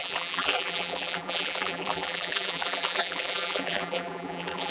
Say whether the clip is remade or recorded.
remade